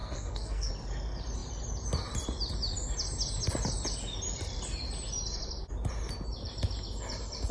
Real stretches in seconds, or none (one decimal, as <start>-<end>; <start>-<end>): 0.7-7.5